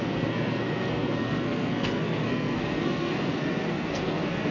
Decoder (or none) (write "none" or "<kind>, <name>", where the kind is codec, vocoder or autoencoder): codec, SNAC